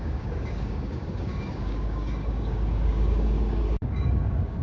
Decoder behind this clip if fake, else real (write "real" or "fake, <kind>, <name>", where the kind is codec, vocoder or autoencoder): fake, codec, DAC